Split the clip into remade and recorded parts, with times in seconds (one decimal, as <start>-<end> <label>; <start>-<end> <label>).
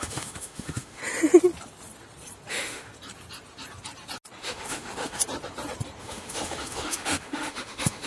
0.0-1.0 remade; 1.0-2.5 recorded; 2.5-2.9 remade; 2.9-4.4 recorded; 4.4-5.2 remade; 5.2-6.0 recorded; 6.0-8.1 remade